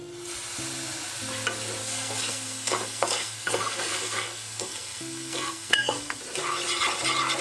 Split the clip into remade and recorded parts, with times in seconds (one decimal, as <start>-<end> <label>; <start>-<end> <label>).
0.0-1.8 recorded; 1.8-6.2 remade; 6.2-7.4 recorded